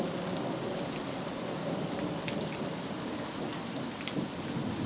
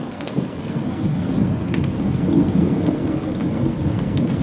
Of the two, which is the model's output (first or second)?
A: second